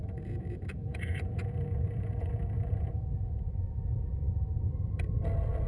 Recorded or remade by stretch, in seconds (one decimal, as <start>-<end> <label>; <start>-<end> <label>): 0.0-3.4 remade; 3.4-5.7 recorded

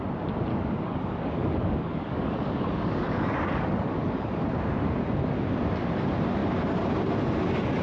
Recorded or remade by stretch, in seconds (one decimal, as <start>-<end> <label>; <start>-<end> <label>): 0.0-0.5 recorded; 0.5-4.4 remade; 4.4-7.8 recorded

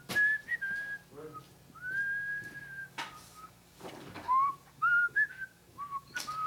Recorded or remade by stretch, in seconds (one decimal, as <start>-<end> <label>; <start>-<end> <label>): 0.0-2.8 recorded; 2.8-6.5 remade

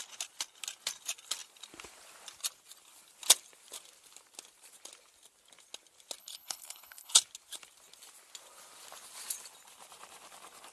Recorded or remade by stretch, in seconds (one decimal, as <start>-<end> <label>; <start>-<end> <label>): 0.0-6.2 recorded; 6.2-7.2 remade; 7.2-10.7 recorded

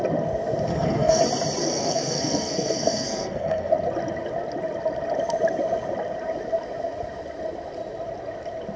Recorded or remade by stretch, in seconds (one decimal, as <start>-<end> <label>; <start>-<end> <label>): 0.0-0.7 recorded; 0.7-1.2 remade; 1.2-1.6 recorded; 1.6-3.7 remade; 3.7-8.8 recorded

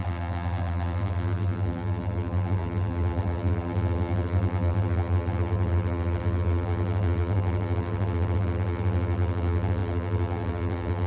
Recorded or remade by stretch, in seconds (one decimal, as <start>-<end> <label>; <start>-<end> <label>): 0.0-11.1 remade